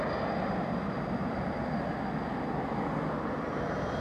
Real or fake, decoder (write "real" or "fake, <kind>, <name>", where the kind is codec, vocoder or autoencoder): real